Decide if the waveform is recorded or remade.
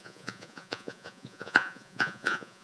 remade